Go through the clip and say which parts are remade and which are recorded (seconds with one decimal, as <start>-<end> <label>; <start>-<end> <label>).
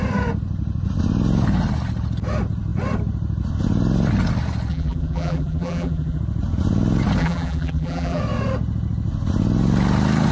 0.0-4.7 recorded; 4.7-6.2 remade; 6.2-7.2 recorded; 7.2-8.2 remade; 8.2-10.3 recorded